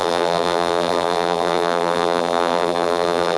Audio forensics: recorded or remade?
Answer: remade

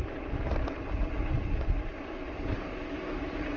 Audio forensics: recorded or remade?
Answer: recorded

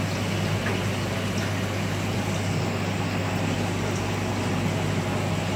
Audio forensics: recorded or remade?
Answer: recorded